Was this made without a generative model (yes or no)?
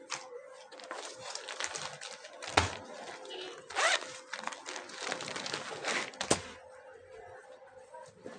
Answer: yes